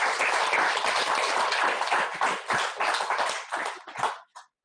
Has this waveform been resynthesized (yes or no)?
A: no